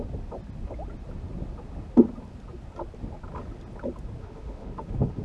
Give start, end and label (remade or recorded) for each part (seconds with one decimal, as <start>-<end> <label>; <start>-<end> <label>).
0.0-4.2 recorded; 4.2-5.2 remade